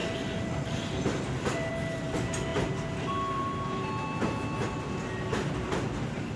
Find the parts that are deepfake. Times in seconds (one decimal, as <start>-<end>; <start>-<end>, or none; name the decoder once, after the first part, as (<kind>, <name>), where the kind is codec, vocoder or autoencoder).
0.0-1.7 (vocoder, BigVGAN v2)